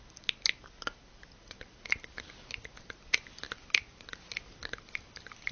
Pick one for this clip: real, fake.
real